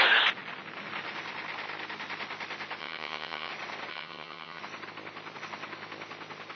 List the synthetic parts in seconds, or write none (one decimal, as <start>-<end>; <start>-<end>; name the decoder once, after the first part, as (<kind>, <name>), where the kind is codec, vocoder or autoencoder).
2.8-3.5 (vocoder, HiFi-GAN); 3.9-4.6